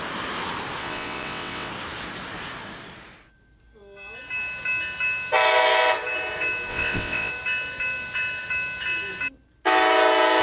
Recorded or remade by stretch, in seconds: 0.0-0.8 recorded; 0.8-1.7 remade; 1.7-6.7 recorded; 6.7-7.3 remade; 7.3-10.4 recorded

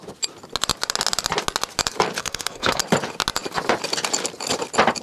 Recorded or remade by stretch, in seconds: 0.0-2.2 recorded; 2.2-2.8 remade; 2.8-5.0 recorded

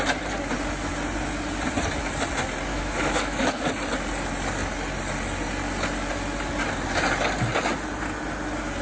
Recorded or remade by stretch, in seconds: 0.0-2.7 recorded; 2.7-3.7 remade; 3.7-8.8 recorded

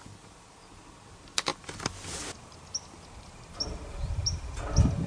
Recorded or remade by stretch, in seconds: 0.0-5.1 recorded

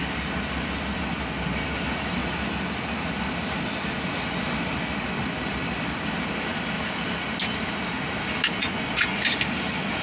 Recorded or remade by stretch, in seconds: 0.0-8.6 recorded; 8.6-9.2 remade; 9.2-10.0 recorded

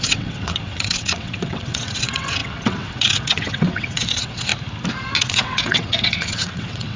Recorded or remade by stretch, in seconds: 0.0-4.5 remade; 4.5-5.2 recorded; 5.2-7.0 remade